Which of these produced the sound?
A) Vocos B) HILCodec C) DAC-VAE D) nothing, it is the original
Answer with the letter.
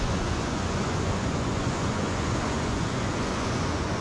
A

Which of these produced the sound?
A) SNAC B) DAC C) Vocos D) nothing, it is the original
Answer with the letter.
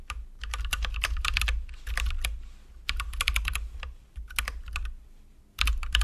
D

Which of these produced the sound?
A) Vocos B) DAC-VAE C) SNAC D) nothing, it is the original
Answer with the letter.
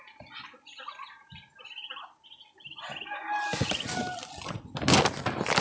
D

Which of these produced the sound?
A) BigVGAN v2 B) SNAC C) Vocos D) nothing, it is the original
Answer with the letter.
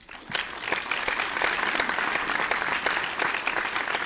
D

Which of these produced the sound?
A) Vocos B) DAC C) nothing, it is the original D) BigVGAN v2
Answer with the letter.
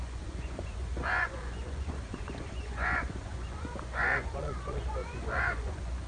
A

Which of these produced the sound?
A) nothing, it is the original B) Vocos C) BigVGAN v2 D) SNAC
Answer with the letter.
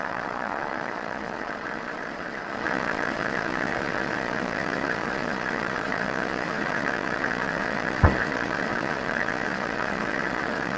B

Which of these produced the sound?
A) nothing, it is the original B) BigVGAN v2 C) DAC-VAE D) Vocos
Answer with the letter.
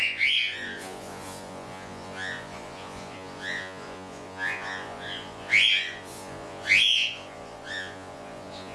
D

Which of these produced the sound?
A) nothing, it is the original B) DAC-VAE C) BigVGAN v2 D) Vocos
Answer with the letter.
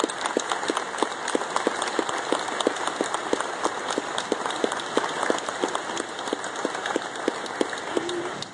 A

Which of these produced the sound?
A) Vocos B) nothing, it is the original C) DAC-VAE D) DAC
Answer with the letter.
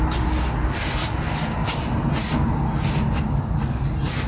B